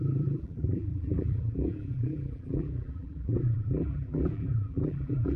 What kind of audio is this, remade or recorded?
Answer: remade